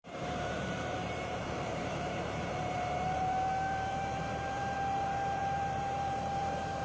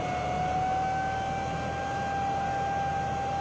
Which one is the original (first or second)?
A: second